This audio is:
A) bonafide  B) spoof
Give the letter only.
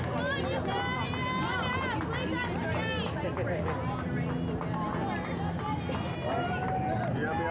A